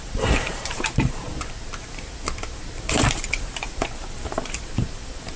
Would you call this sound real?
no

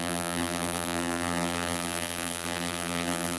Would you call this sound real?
no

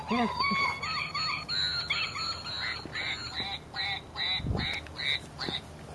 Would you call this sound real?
yes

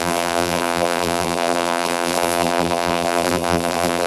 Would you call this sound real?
no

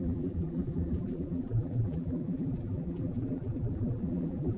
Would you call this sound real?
no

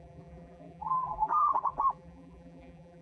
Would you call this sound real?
no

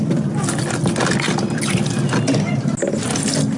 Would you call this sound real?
yes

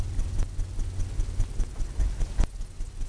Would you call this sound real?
yes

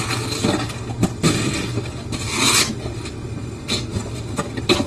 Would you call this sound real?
yes